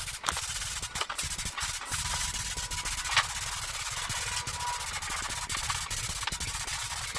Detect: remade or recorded recorded